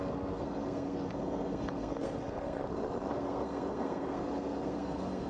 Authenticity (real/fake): fake